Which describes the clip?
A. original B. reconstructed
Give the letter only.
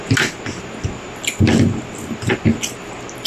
A